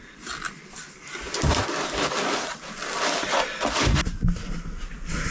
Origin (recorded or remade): recorded